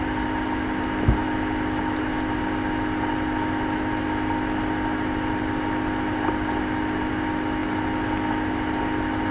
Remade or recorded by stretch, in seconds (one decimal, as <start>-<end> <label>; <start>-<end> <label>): 0.0-9.3 recorded